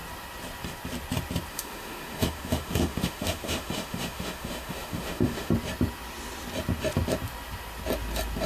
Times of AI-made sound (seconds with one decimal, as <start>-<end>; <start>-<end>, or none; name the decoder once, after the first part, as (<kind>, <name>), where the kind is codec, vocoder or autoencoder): 1.5-5.5 (autoencoder, DAC-VAE)